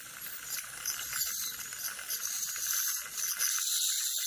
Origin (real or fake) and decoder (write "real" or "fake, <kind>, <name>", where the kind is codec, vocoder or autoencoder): real